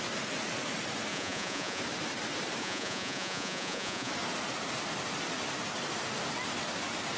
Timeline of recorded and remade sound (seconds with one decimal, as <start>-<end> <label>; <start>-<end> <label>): 0.0-1.1 recorded; 1.1-1.8 remade; 1.8-2.6 recorded; 2.6-4.1 remade; 4.1-7.2 recorded